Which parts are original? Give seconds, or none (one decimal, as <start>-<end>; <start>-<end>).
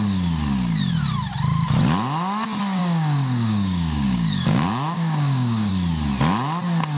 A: 0.0-2.8; 5.7-7.0